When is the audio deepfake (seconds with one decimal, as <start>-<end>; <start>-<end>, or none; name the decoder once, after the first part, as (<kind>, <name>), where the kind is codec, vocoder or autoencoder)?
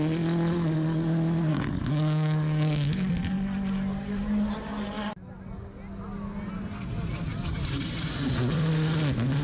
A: 1.5-3.1 (codec, DAC)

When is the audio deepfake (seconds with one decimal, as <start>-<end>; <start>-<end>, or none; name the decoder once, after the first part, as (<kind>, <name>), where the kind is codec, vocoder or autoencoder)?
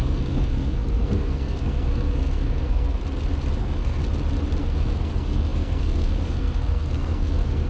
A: 0.0-3.0 (codec, SNAC); 3.6-4.0; 4.6-7.7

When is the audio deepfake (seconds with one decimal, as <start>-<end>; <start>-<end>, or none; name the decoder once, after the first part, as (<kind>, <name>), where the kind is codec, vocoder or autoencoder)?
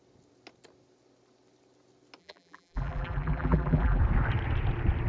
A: 2.2-4.0 (vocoder, BigVGAN v2)